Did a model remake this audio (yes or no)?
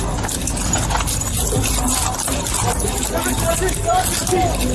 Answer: no